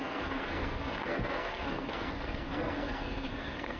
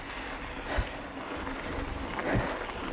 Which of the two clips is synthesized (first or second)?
first